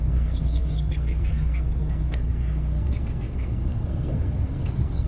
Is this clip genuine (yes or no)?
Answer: no